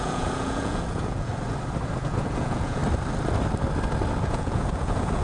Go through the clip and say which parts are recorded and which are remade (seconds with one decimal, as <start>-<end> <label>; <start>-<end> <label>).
0.0-1.3 remade; 1.3-1.9 recorded; 1.9-2.8 remade; 2.8-4.1 recorded; 4.1-5.2 remade